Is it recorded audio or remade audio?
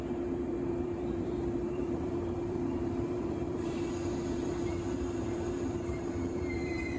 remade